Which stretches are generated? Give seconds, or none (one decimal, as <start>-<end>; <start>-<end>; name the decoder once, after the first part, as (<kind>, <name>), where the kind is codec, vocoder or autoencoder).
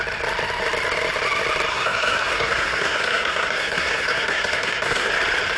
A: 1.7-5.1 (codec, SNAC)